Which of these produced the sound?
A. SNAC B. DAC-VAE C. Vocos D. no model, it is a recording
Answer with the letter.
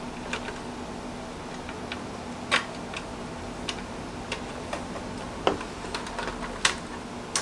D